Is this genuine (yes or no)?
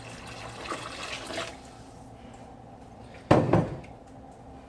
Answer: yes